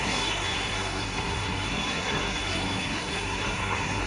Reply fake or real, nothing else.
fake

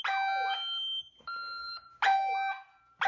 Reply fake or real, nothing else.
real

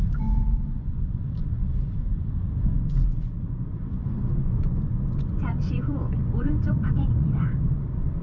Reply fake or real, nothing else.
fake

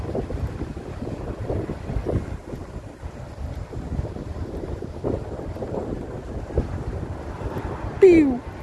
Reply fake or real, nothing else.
real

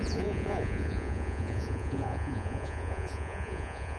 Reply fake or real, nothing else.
fake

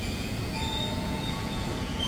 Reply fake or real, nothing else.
fake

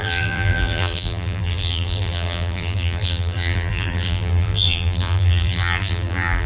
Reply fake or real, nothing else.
fake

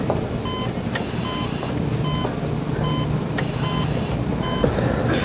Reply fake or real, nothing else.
real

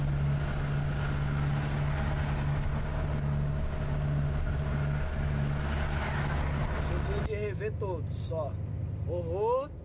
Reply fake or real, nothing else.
real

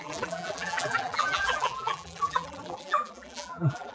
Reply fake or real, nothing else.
fake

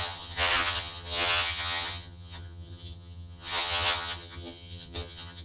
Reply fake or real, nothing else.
fake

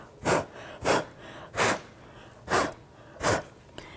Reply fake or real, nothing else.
real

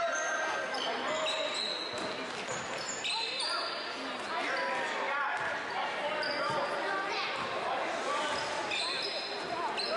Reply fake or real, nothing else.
real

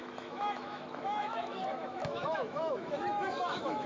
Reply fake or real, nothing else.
fake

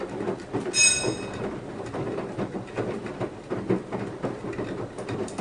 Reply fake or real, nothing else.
real